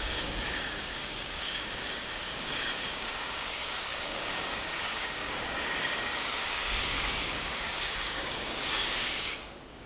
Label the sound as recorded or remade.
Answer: remade